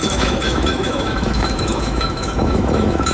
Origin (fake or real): fake